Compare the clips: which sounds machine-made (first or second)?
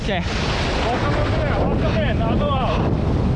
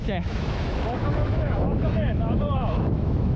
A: second